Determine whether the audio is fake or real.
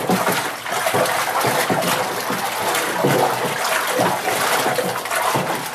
real